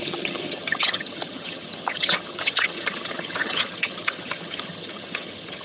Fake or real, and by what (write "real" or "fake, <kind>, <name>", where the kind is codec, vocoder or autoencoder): fake, vocoder, HiFi-GAN